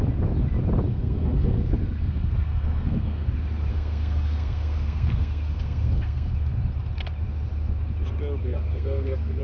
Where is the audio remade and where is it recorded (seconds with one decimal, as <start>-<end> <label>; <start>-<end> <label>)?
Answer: 0.0-0.9 recorded; 0.9-3.3 remade; 3.3-3.7 recorded; 3.7-6.3 remade; 6.3-8.4 recorded; 8.4-9.4 remade